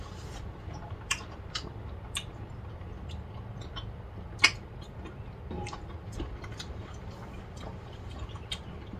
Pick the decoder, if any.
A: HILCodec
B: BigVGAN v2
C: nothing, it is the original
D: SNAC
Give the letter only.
C